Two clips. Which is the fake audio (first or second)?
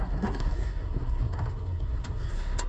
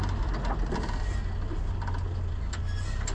first